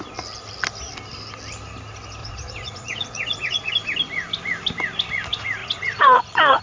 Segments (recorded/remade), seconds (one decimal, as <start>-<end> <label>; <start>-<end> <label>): 0.0-2.2 recorded; 2.2-3.7 remade; 3.7-5.6 recorded; 5.6-6.6 remade